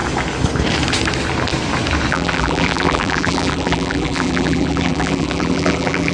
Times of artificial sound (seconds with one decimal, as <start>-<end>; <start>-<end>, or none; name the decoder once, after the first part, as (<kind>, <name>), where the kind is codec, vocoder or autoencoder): 2.1-6.1 (vocoder, BigVGAN v2)